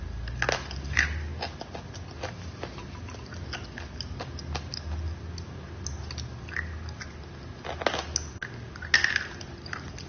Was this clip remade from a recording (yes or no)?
no